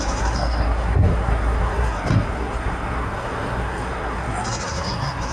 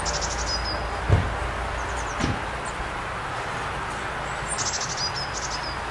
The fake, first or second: first